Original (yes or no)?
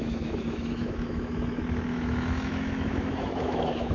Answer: no